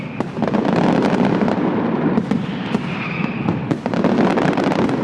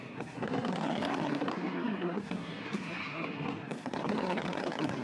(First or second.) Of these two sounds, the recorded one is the first